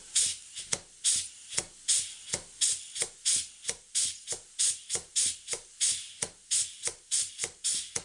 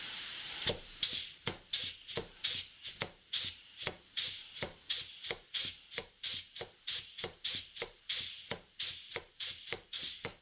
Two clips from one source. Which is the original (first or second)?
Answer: first